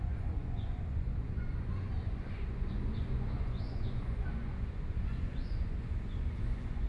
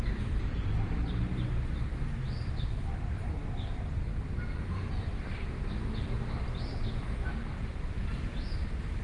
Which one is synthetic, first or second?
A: first